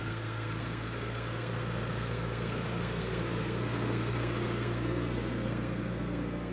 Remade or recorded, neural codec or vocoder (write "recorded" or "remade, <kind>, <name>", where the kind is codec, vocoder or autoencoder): remade, codec, SNAC